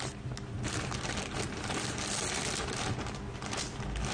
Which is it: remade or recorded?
recorded